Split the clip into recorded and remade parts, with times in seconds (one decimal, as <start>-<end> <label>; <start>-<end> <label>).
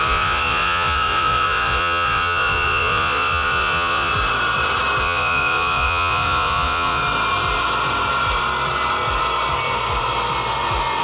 0.0-4.1 remade; 4.1-5.0 recorded; 5.0-7.0 remade; 7.0-11.0 recorded